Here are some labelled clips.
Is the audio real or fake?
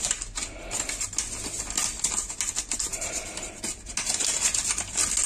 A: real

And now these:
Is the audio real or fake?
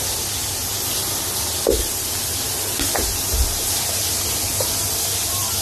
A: real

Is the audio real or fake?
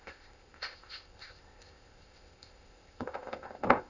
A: fake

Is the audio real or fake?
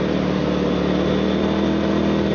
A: real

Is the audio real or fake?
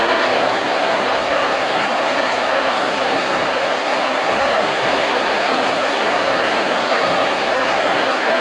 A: fake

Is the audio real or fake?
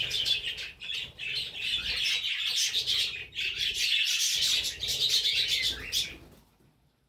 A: real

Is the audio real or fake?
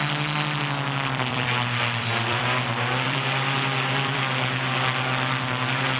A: fake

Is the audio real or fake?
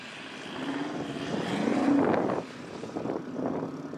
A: real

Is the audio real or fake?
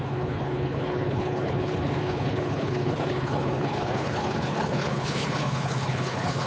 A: fake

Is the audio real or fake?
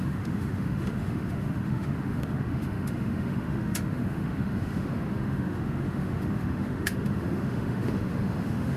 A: fake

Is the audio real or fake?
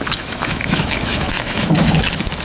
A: fake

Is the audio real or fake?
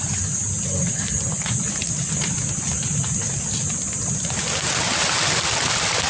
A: real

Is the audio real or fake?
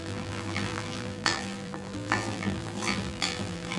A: fake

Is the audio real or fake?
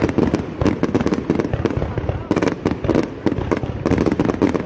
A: real